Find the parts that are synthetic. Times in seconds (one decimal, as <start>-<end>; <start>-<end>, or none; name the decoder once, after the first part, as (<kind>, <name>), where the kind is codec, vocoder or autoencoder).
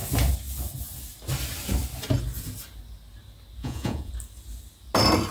3.6-4.1 (vocoder, Vocos)